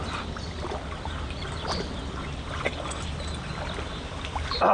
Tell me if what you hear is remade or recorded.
recorded